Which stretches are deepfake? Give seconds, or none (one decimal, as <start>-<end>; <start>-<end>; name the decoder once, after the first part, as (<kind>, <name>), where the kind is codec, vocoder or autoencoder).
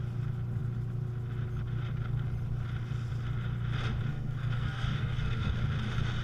4.1-5.5 (codec, SNAC)